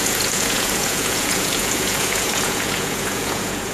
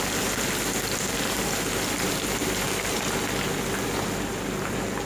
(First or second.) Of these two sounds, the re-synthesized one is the first